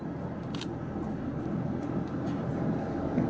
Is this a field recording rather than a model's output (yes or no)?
yes